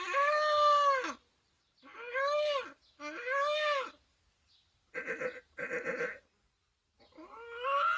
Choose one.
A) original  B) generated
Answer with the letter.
A